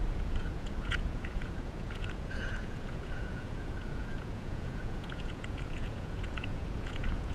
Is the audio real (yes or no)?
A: no